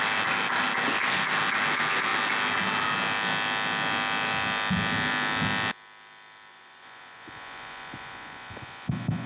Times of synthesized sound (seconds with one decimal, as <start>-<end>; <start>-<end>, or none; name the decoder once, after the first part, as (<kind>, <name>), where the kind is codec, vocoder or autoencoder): 6.5-9.3 (vocoder, Vocos)